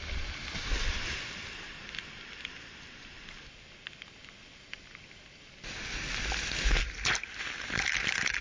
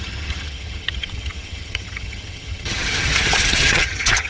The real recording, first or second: first